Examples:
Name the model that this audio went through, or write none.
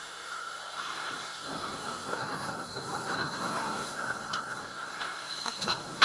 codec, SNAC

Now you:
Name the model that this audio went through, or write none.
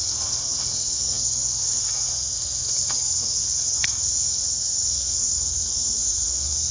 codec, SNAC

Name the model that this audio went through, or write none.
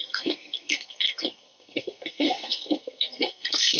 codec, SNAC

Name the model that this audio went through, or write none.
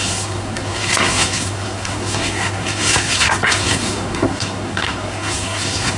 codec, SNAC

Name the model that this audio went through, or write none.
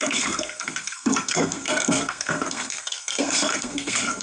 codec, SNAC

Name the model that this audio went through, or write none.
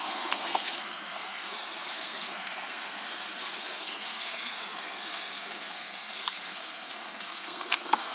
codec, SNAC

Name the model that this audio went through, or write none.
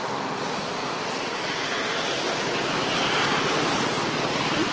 none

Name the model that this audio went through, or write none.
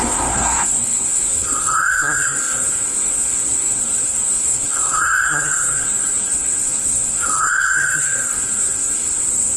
codec, SNAC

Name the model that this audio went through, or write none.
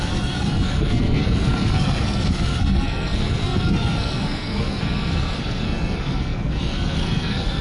codec, SNAC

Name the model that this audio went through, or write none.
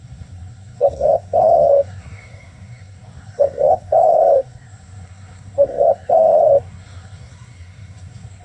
codec, SNAC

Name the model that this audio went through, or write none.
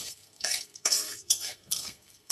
codec, SNAC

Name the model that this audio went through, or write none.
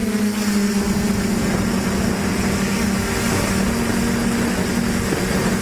none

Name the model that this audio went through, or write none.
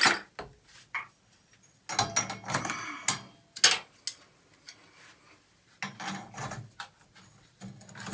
none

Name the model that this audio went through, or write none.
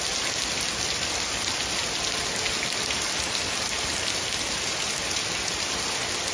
none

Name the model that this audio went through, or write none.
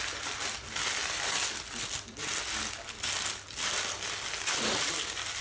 none